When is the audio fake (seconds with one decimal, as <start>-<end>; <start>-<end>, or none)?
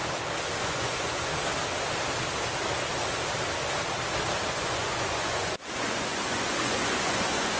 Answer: 0.6-1.3; 4.5-7.6